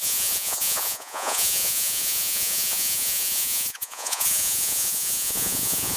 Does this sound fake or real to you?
fake